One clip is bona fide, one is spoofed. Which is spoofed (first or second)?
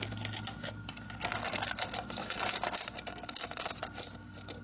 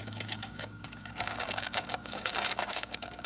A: second